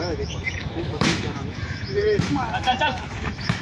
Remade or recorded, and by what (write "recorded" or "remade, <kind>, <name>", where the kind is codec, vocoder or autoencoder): remade, autoencoder, DAC-VAE